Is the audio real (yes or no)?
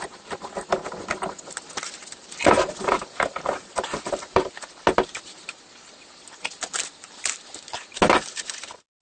yes